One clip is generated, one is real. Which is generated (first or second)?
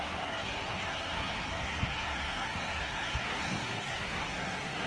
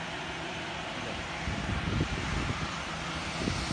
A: first